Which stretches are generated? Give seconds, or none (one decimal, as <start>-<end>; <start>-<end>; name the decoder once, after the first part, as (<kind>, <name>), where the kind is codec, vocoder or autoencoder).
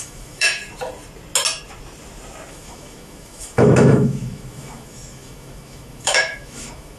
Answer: 0.0-0.6 (autoencoder, DAC-VAE); 2.5-7.0